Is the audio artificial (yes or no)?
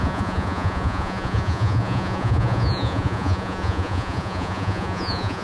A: yes